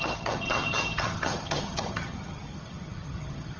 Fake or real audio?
fake